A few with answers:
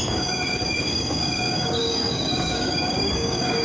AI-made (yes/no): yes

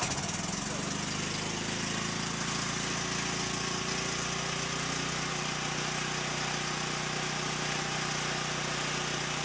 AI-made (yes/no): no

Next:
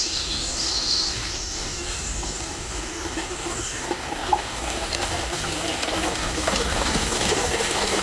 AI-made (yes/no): yes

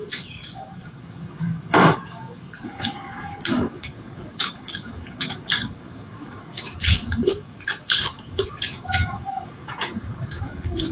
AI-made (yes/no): yes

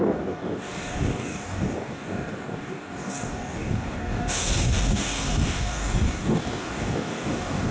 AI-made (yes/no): yes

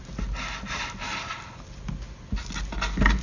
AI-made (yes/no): no